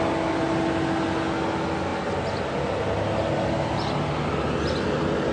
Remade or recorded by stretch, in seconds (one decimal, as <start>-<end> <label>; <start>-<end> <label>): 0.0-5.3 recorded